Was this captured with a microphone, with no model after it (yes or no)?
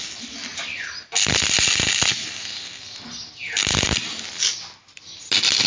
yes